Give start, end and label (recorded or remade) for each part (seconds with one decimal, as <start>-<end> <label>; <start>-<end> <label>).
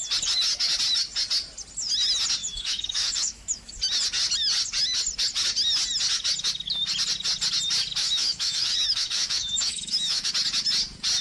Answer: 0.0-2.4 recorded; 2.4-3.7 remade; 3.7-8.0 recorded; 8.0-10.3 remade; 10.3-11.2 recorded